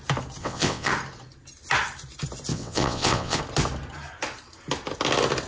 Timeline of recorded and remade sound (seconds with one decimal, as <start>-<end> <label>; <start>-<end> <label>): 0.0-0.4 recorded; 0.4-0.9 remade; 0.9-2.5 recorded; 2.5-3.4 remade; 3.4-5.5 recorded